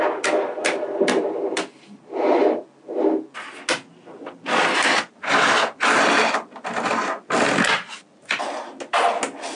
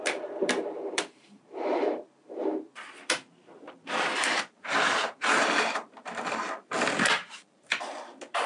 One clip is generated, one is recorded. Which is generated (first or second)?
second